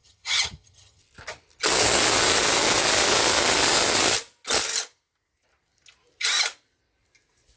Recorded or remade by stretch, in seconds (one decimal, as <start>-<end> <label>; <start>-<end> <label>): 0.0-1.0 remade; 1.0-7.6 recorded